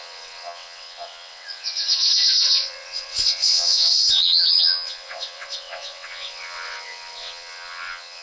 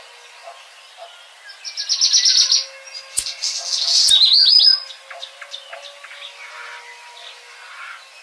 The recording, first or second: second